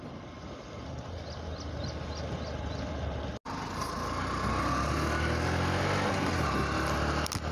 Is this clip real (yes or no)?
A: yes